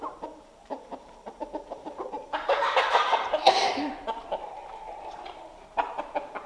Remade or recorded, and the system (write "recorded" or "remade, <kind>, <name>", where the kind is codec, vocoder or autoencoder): remade, vocoder, BigVGAN v2